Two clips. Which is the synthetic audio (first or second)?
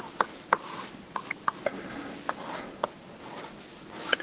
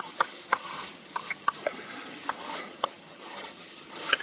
second